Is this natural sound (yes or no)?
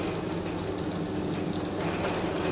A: yes